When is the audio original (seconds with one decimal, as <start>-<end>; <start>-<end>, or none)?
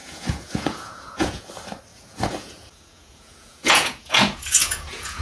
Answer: 1.5-1.9